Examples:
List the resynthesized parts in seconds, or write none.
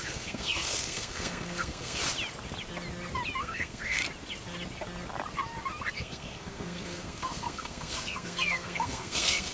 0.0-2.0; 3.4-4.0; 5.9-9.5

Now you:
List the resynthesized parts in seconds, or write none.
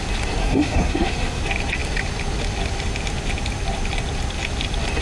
0.4-1.4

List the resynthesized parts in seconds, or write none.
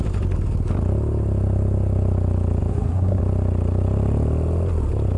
2.7-3.2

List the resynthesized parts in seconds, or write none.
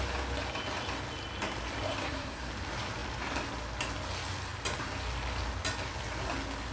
2.0-2.5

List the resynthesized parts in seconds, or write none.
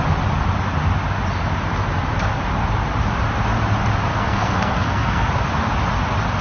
4.1-5.3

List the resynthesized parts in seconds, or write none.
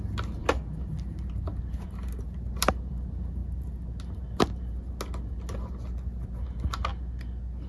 none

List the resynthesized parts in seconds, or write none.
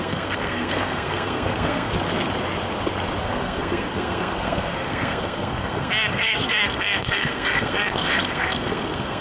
0.0-1.9; 3.2-9.2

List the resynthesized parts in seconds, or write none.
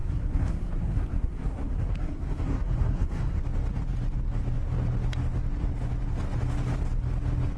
0.0-3.4